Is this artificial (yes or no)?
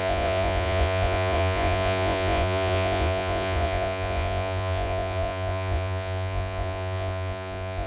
yes